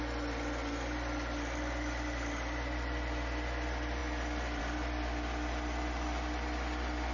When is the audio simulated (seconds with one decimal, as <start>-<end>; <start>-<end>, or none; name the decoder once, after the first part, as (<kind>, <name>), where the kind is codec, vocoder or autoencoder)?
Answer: none